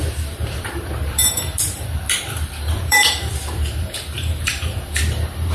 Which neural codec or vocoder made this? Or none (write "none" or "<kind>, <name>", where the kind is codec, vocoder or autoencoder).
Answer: vocoder, BigVGAN v2